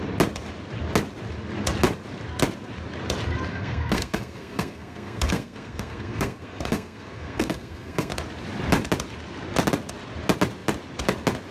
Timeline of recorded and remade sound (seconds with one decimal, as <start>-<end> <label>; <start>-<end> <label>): 0.0-3.5 recorded; 3.5-8.1 remade; 8.1-11.5 recorded